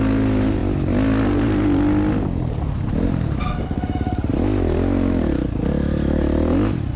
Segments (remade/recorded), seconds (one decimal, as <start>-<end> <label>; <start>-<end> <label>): 0.0-7.0 recorded